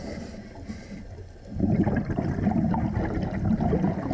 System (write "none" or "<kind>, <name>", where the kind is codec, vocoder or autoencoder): none